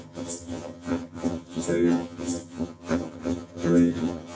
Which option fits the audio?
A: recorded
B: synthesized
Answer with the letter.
B